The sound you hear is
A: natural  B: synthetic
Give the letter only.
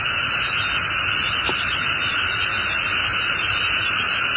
A